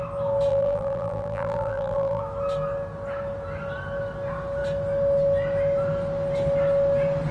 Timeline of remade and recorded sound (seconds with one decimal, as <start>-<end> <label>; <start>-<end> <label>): 0.0-0.5 recorded; 0.5-2.2 remade; 2.2-7.3 recorded